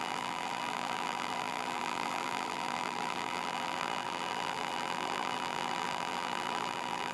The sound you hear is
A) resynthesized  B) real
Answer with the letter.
A